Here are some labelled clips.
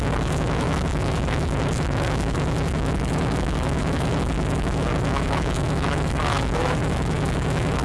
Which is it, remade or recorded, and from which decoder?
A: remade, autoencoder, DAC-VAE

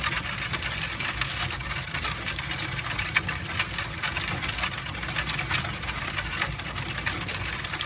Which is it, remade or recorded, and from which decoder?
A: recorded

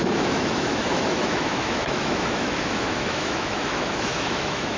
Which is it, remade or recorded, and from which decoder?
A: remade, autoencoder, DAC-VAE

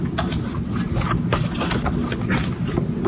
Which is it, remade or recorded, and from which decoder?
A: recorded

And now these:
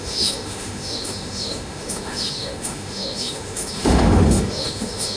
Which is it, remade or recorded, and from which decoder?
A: remade, autoencoder, DAC-VAE